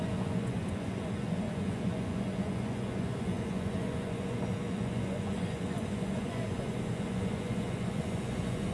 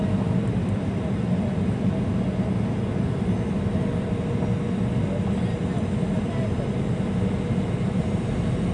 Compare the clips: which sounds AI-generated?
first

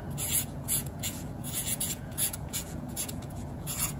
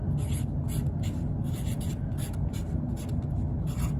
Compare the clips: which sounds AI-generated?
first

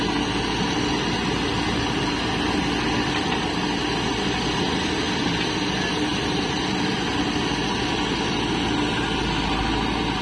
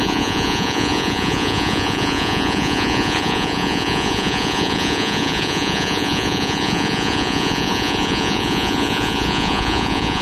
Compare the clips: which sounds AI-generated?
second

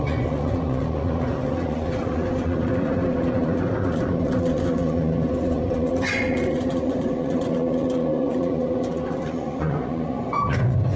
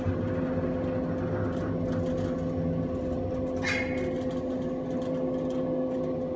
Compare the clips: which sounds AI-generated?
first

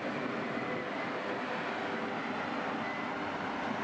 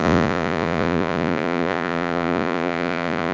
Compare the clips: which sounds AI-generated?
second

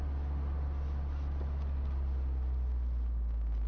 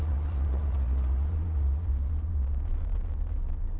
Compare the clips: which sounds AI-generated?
second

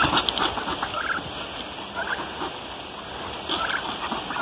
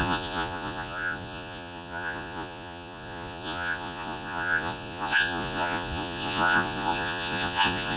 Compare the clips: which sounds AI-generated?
second